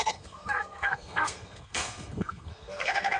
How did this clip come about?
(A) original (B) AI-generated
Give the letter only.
B